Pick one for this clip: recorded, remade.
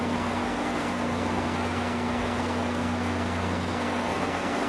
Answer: remade